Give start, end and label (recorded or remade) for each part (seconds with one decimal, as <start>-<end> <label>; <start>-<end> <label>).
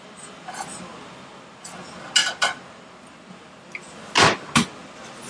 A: 0.0-5.3 recorded